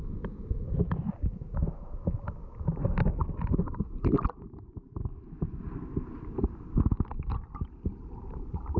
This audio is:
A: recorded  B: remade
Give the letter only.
A